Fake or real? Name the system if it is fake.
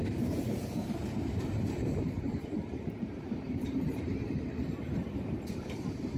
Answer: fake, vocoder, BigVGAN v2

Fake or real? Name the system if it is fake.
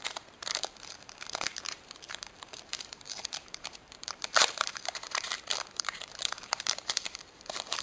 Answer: fake, vocoder, BigVGAN v2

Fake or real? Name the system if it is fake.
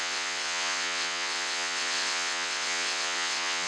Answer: fake, vocoder, WaveNeXt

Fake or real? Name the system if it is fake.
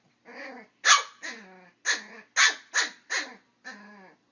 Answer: real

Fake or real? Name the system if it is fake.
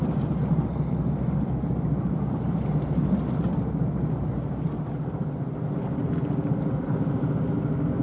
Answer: real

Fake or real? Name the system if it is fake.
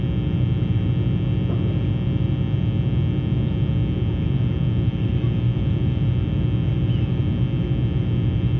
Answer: real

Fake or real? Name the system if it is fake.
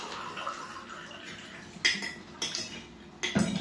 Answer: real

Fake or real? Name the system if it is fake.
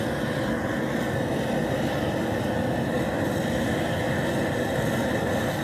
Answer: real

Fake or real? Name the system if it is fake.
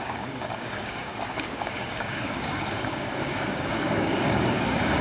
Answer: fake, codec, DAC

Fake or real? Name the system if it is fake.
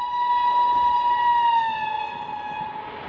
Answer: real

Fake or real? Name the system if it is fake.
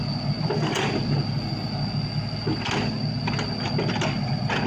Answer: real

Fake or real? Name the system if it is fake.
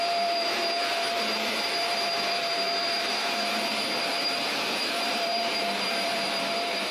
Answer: fake, vocoder, BigVGAN v2